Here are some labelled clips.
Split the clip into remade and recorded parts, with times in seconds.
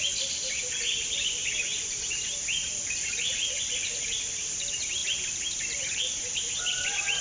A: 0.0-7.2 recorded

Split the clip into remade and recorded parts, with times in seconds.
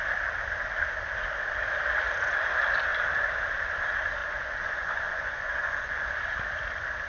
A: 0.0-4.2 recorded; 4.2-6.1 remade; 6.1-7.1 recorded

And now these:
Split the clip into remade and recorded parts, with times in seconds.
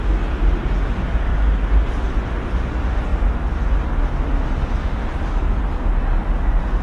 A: 0.0-6.8 recorded